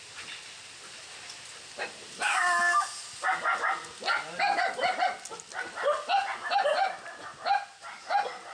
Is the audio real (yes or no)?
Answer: yes